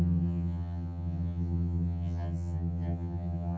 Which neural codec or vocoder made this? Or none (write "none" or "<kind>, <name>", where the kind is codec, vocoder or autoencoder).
vocoder, HiFi-GAN